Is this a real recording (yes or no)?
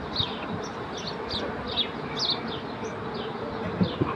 yes